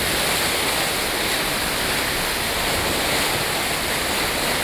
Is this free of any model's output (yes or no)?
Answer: yes